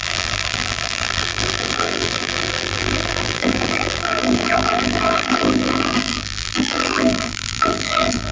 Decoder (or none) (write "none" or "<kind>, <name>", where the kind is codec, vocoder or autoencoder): vocoder, BigVGAN v2